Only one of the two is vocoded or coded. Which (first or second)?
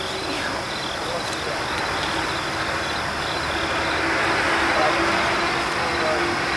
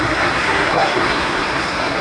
second